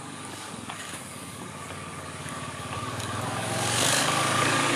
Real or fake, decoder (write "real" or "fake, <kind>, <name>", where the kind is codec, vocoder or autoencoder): fake, codec, DAC